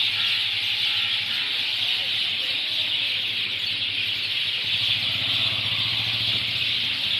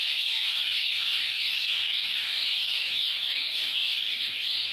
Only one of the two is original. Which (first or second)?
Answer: first